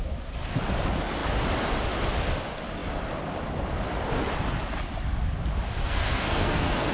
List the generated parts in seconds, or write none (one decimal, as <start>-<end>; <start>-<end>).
5.8-6.9

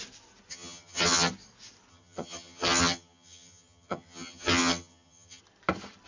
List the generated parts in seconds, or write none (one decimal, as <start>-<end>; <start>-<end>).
0.5-1.3; 1.9-5.4

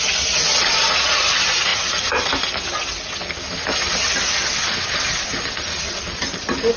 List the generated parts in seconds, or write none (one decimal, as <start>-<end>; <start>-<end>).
none

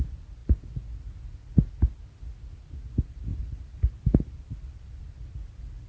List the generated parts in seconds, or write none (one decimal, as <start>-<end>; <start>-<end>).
3.3-5.9

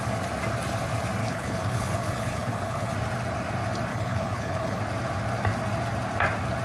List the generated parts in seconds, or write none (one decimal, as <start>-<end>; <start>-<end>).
1.2-2.9; 3.9-4.8

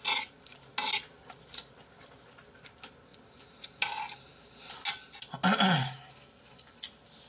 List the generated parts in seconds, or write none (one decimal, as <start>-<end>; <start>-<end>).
none

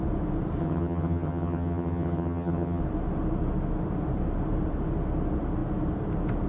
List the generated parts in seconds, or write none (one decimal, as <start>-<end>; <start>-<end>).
0.6-2.8

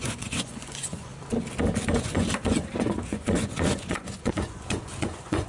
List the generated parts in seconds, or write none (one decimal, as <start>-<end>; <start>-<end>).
0.0-1.1; 2.0-5.5